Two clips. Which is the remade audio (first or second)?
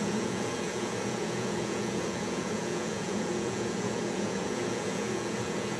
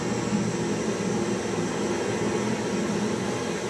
first